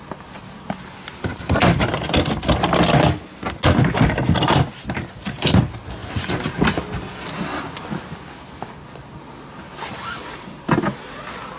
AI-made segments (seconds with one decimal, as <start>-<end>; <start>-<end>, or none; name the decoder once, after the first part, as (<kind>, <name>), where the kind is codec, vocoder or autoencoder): none